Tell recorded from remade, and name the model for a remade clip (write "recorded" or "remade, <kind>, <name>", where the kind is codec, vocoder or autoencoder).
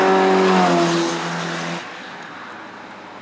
recorded